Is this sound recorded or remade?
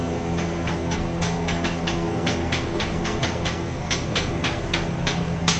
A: remade